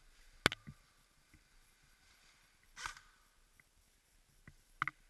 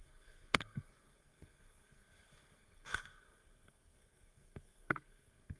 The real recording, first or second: first